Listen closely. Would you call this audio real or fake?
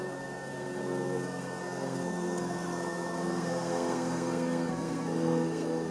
fake